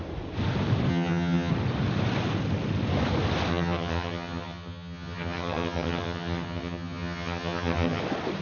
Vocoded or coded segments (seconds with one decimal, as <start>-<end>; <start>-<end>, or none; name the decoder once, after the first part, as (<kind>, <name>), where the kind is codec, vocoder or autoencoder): 0.9-1.5 (vocoder, HiFi-GAN); 3.5-8.0